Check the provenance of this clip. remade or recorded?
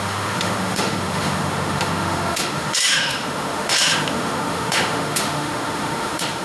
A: remade